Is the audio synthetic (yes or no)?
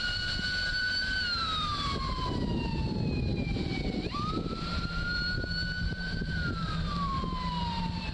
yes